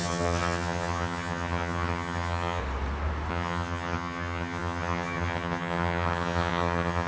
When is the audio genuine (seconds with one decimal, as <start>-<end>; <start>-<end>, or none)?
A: 2.6-3.3